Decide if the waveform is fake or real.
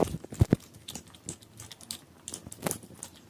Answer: real